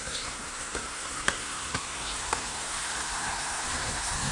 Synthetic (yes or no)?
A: yes